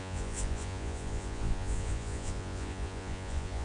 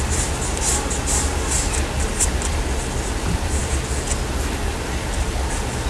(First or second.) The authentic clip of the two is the second